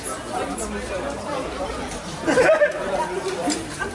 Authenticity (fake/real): real